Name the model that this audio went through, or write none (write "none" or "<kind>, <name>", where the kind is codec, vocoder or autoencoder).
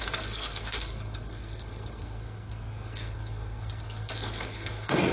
codec, SNAC